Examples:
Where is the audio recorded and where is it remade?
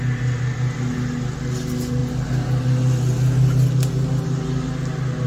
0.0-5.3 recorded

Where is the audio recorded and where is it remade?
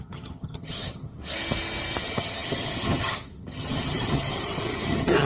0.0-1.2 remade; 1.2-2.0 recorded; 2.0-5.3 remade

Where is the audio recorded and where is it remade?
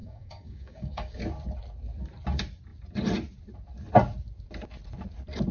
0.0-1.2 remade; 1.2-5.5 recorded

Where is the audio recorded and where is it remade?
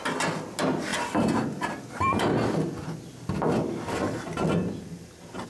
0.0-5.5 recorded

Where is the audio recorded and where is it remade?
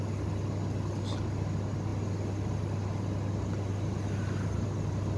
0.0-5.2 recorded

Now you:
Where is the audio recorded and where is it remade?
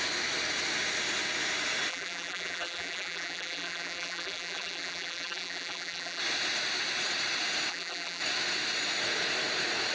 0.0-1.9 recorded; 1.9-6.2 remade; 6.2-7.7 recorded; 7.7-8.2 remade; 8.2-9.9 recorded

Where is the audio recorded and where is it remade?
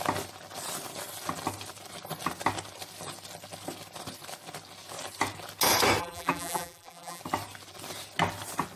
0.0-6.0 recorded; 6.0-7.2 remade; 7.2-8.8 recorded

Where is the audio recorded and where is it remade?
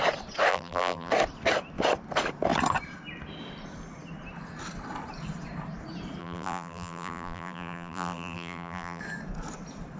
0.0-0.5 recorded; 0.5-1.1 remade; 1.1-6.2 recorded; 6.2-9.0 remade; 9.0-10.0 recorded